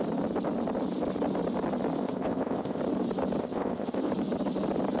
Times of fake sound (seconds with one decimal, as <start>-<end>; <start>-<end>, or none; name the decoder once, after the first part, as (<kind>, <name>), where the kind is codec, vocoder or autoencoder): 2.0-2.8 (codec, ZipCodec); 3.4-4.1